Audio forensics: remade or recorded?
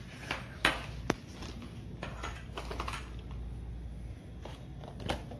recorded